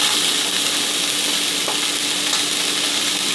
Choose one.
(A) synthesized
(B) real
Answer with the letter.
B